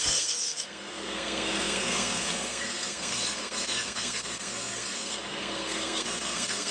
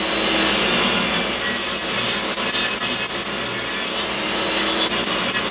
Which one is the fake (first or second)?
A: first